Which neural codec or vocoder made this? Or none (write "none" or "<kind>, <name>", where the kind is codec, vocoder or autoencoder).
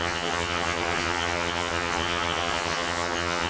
vocoder, HiFi-GAN